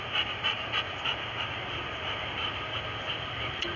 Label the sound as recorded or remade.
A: recorded